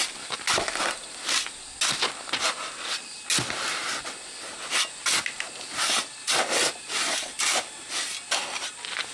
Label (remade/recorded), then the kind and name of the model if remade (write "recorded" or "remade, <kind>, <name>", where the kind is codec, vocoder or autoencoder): recorded